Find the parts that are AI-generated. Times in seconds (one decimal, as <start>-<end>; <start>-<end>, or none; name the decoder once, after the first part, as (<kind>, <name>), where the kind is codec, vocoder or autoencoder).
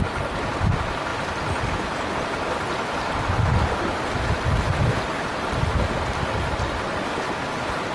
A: none